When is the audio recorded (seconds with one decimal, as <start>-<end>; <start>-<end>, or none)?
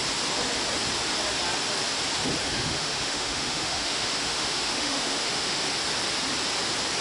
0.0-2.4; 5.6-7.0